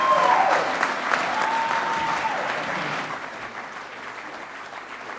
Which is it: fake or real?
real